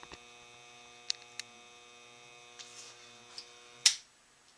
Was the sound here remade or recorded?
recorded